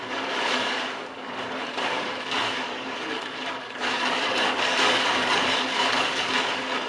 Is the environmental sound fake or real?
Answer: fake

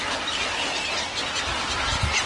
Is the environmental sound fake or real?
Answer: real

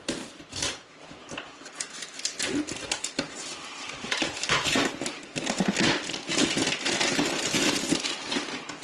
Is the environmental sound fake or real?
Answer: real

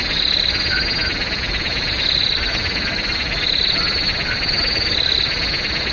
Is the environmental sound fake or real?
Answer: real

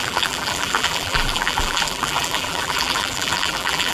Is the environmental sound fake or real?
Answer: fake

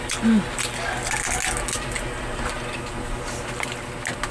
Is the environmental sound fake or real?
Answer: real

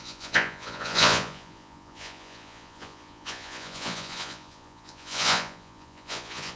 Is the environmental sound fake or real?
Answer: fake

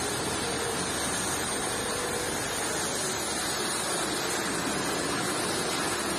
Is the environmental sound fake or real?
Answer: real